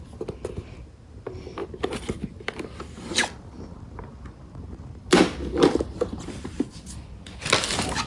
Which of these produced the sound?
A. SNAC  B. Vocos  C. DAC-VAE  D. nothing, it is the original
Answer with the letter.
D